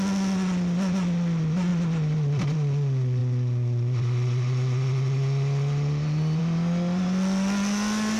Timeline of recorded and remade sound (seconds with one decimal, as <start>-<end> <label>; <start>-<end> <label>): 0.0-8.2 recorded